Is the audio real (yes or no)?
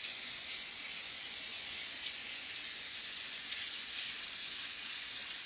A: no